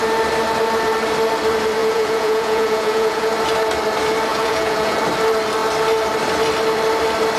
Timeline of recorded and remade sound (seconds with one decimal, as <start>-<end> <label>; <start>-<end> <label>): 0.0-1.8 recorded; 1.8-3.3 remade; 3.3-4.3 recorded; 4.3-5.0 remade; 5.0-7.4 recorded